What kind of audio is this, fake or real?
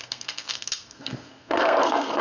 fake